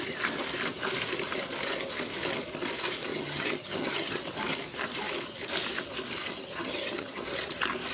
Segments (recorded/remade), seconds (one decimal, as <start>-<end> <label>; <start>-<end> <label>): 0.0-3.1 recorded; 3.1-4.2 remade; 4.2-6.2 recorded; 6.2-7.2 remade; 7.2-7.9 recorded